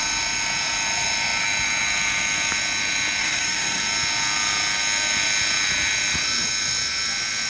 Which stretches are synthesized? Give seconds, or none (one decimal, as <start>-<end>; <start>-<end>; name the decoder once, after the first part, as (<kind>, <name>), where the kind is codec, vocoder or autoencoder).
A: 3.2-3.8 (codec, DAC)